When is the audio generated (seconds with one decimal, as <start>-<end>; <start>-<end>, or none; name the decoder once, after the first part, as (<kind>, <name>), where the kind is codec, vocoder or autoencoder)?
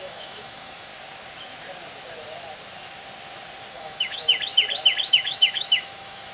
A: 0.0-0.9 (autoencoder, DAC-VAE); 3.7-4.3; 5.1-6.3